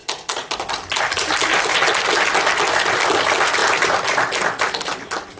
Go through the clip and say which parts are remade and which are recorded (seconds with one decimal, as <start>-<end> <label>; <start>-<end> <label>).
0.0-5.4 recorded